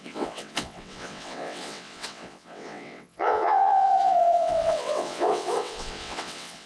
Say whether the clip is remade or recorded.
remade